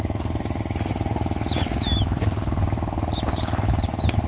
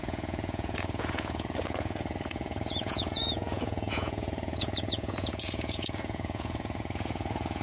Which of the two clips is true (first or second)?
first